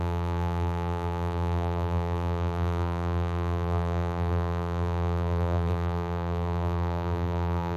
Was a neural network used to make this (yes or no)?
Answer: yes